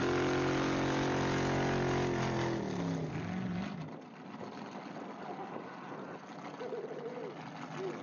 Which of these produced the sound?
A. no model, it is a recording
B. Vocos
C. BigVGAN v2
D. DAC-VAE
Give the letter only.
A